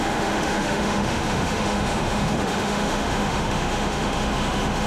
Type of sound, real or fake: fake